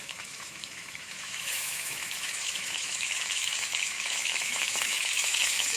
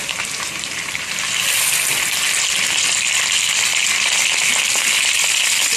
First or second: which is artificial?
first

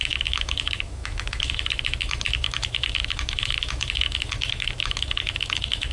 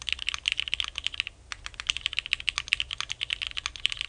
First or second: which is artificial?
first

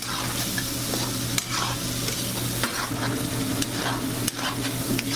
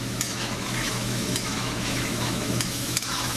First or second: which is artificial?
second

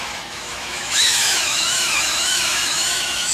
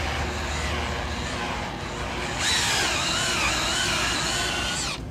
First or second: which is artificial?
first